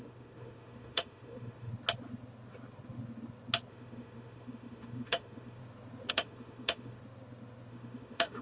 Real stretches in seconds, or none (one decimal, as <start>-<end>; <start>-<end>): 1.7-3.7; 5.6-6.1; 7.0-7.7